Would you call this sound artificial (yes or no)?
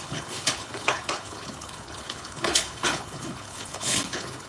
yes